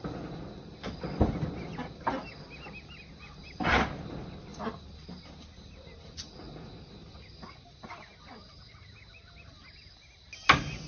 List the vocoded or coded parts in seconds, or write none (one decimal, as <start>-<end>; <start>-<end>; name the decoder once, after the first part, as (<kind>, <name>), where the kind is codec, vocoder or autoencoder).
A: none